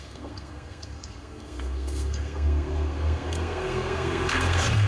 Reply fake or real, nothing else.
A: fake